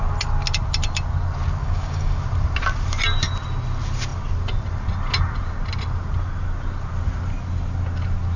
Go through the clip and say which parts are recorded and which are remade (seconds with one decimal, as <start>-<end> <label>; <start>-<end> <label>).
0.0-1.6 recorded; 1.6-2.2 remade; 2.2-8.4 recorded